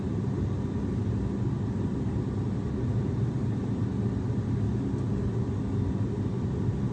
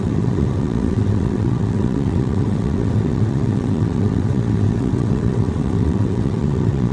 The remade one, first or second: second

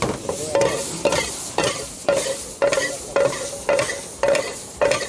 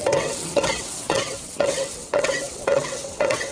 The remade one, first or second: second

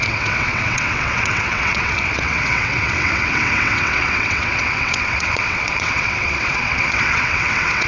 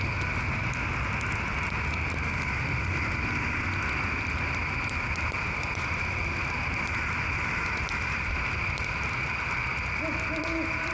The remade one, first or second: first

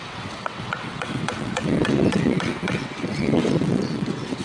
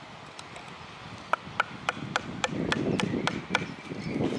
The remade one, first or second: first